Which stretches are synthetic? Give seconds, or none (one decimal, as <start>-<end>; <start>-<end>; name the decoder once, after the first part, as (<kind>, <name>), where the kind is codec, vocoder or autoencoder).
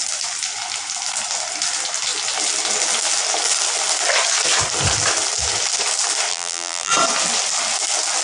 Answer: 6.3-6.9 (vocoder, BigVGAN v2)